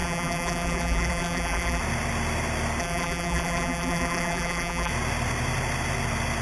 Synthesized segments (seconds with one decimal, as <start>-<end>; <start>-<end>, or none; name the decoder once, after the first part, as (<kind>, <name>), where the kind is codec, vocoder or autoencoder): 0.0-1.8 (vocoder, BigVGAN v2); 2.8-4.9